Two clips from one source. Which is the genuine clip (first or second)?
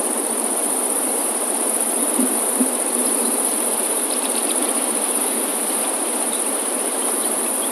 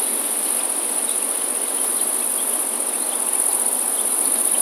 second